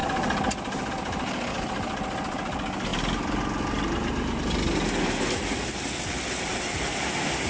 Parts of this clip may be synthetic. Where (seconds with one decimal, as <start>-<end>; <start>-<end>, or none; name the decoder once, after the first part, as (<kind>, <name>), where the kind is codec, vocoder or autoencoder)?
none